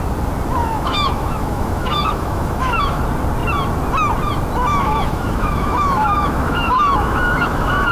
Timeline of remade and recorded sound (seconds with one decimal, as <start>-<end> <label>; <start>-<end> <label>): 0.0-0.6 recorded; 0.6-3.0 remade; 3.0-4.7 recorded; 4.7-7.9 remade